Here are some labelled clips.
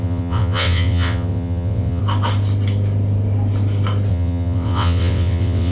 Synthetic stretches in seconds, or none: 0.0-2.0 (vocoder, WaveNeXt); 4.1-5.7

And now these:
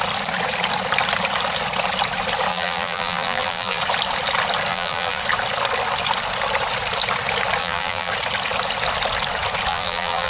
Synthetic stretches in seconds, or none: 2.5-3.8 (vocoder, BigVGAN v2); 4.7-5.2; 7.6-8.1; 9.7-10.3

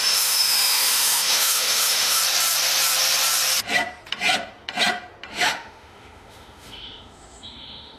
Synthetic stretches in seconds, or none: 0.0-2.2 (autoencoder, DAC-VAE); 5.3-8.0